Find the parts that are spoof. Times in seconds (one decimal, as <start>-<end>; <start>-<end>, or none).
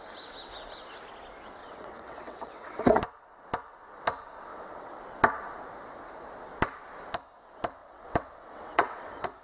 1.6-3.0; 4.5-5.0; 7.8-9.4